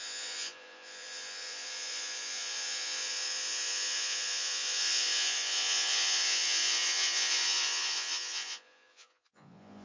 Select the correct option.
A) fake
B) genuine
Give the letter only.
A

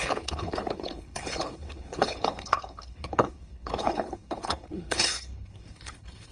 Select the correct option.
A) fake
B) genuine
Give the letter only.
A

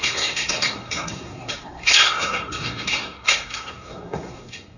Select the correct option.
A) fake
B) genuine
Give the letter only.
A